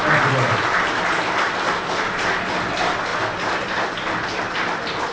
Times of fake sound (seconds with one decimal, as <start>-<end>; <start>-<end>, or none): none